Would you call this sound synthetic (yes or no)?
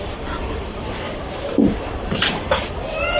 yes